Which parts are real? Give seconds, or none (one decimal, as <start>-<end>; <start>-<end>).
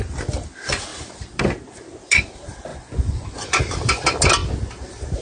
0.0-2.7; 3.6-5.2